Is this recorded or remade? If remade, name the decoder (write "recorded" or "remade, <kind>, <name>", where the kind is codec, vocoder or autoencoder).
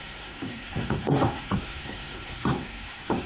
remade, codec, SNAC